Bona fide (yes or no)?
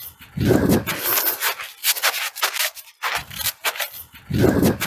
yes